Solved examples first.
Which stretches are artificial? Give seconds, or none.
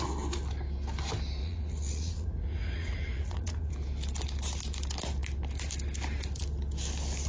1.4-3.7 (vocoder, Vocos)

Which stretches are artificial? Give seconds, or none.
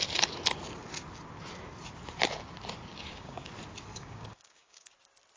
2.9-3.5 (codec, DAC); 3.9-4.9